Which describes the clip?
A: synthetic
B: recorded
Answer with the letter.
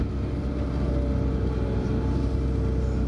B